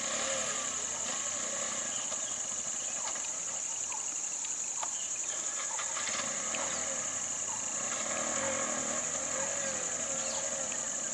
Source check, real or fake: real